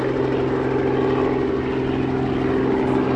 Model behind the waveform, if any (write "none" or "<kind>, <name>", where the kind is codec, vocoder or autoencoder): none